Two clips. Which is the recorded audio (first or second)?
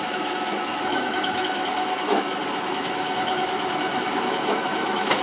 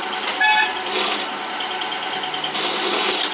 second